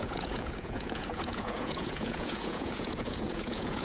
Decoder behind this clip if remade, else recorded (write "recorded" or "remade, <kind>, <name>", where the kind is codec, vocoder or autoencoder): remade, vocoder, Vocos